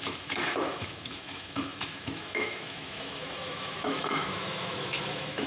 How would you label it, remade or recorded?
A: remade